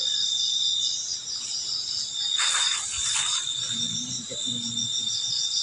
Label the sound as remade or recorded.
recorded